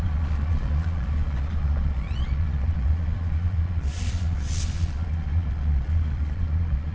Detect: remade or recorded remade